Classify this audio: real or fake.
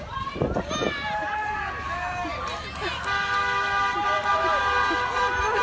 real